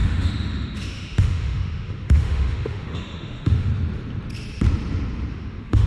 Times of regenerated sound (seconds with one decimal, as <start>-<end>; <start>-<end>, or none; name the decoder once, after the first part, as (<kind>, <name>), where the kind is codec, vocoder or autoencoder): 0.0-3.7 (autoencoder, DAC-VAE); 5.3-5.9

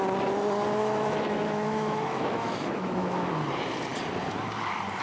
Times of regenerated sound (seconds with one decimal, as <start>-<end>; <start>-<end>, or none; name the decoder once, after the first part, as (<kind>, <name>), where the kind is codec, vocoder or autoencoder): 0.8-3.3 (autoencoder, DAC-VAE)

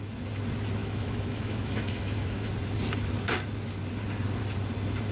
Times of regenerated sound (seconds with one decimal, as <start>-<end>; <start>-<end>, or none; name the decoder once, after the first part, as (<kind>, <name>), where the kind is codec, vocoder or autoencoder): 0.8-2.5 (autoencoder, DAC-VAE)

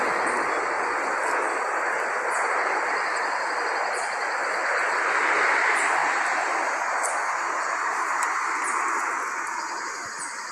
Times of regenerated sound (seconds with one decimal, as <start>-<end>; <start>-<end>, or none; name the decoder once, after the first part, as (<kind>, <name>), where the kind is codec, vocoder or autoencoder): none

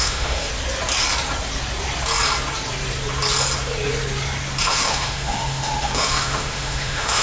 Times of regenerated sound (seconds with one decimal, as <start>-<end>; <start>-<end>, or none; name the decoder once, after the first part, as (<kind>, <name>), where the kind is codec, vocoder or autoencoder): 0.0-0.5 (autoencoder, DAC-VAE); 4.6-7.2

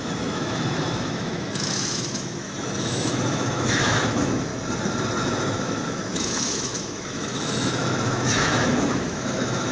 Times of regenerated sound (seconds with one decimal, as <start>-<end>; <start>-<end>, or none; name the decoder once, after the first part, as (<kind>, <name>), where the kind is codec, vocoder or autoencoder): 0.0-4.5 (autoencoder, DAC-VAE); 5.2-9.7

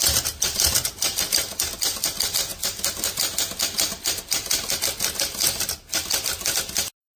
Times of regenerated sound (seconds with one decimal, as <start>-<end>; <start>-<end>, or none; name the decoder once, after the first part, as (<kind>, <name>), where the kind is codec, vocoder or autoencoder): none